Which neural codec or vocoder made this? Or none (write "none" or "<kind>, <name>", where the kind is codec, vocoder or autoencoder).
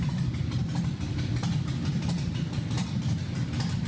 vocoder, BigVGAN v2